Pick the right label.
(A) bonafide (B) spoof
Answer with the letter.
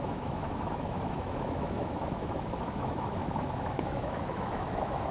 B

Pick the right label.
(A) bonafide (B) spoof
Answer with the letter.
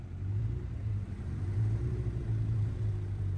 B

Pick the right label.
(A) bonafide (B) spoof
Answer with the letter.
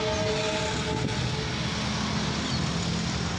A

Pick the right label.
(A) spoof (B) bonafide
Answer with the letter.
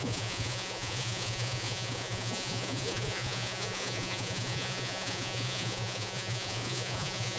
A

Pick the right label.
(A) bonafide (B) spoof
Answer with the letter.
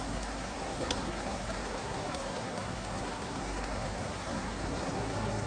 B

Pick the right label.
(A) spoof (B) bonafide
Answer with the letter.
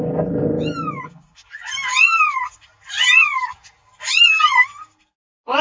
B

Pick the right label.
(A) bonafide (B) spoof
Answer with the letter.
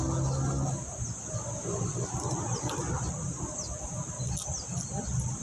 A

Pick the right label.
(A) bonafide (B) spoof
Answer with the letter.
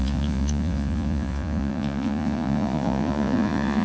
B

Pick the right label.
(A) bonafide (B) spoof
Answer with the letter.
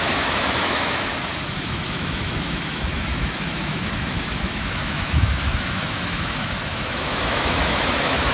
B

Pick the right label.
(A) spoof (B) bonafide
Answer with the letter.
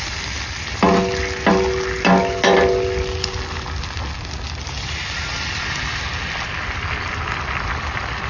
B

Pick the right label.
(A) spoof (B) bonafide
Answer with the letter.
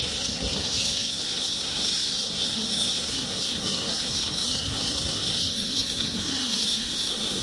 A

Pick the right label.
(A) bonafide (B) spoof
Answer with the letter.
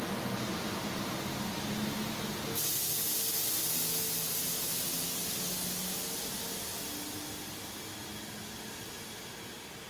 A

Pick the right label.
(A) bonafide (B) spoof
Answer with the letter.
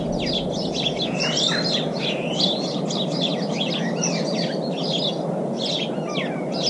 A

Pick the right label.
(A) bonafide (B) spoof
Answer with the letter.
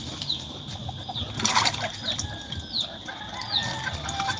A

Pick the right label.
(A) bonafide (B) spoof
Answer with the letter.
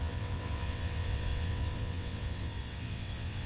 B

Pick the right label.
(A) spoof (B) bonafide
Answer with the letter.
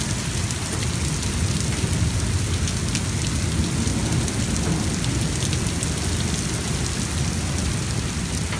B